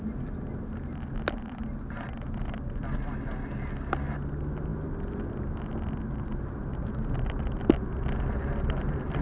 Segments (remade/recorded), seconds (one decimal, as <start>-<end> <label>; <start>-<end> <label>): 0.0-9.2 recorded